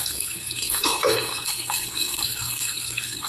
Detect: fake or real fake